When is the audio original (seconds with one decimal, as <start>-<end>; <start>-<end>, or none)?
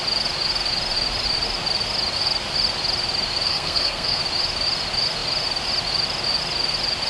0.0-3.5; 4.2-7.1